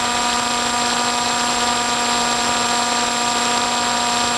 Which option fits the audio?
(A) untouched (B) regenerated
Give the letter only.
A